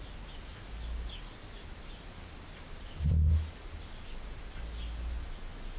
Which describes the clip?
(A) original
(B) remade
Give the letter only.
A